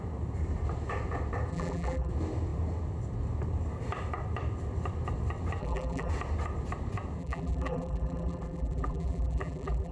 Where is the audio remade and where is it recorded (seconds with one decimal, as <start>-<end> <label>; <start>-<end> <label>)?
0.0-1.5 recorded; 1.5-2.1 remade; 2.1-5.6 recorded; 5.6-6.1 remade; 6.1-7.2 recorded; 7.2-9.9 remade